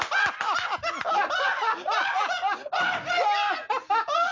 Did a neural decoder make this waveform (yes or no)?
no